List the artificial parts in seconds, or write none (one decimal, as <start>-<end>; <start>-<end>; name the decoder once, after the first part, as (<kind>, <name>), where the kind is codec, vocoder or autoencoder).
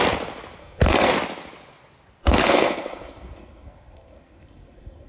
0.6-1.1 (codec, SNAC); 2.2-5.1